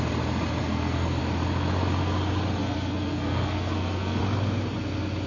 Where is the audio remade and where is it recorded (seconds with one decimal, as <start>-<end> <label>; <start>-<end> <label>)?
0.0-0.6 recorded; 0.6-1.2 remade; 1.2-2.6 recorded; 2.6-4.2 remade; 4.2-5.3 recorded